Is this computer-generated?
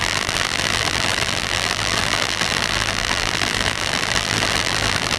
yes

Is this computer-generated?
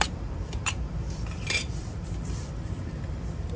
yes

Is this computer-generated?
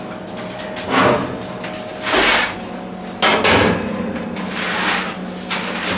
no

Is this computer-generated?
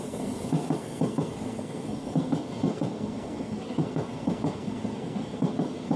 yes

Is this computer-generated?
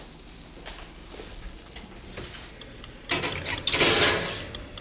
no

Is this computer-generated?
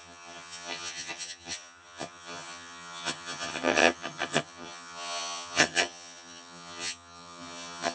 yes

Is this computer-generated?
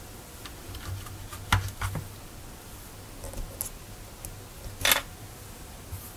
no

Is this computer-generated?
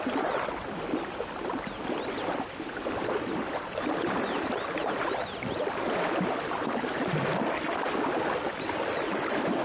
no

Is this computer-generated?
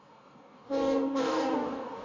yes